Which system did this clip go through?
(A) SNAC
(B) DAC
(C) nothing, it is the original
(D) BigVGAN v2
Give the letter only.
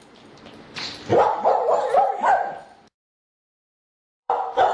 D